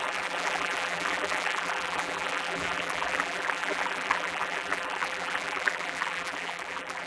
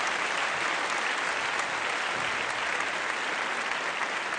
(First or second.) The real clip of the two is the second